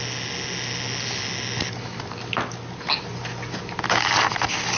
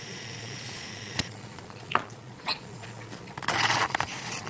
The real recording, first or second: first